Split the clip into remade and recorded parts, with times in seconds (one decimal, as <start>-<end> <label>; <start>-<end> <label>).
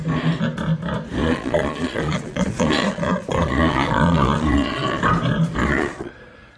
0.0-1.2 recorded; 1.2-5.0 remade; 5.0-5.6 recorded; 5.6-6.1 remade; 6.1-6.6 recorded